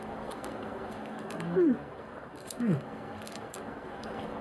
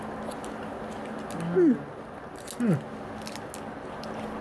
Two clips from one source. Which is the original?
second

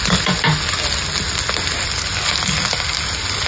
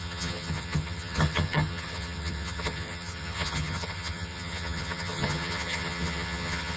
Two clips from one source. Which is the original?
first